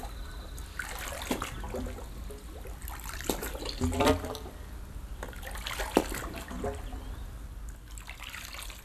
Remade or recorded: recorded